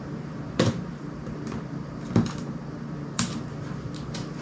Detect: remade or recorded remade